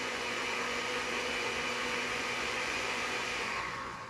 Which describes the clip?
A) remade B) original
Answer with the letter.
A